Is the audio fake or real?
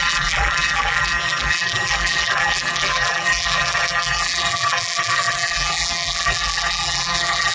fake